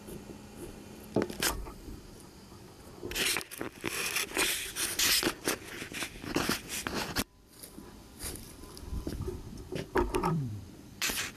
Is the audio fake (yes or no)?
yes